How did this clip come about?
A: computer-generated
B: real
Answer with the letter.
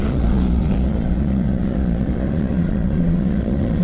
A